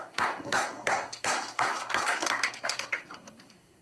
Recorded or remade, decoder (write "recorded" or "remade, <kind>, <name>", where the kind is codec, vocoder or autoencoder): remade, codec, SNAC